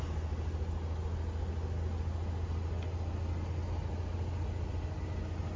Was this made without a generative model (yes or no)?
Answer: yes